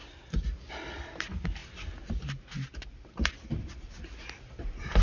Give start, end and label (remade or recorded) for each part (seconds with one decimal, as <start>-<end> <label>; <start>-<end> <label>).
0.0-5.0 recorded